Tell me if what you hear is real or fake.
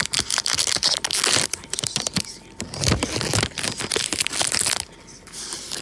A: real